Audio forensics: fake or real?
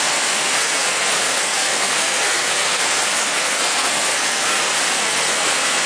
fake